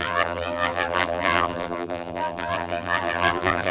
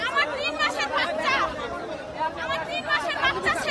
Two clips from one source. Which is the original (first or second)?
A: second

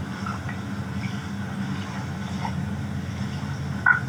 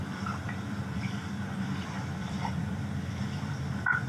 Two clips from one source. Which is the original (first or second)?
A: first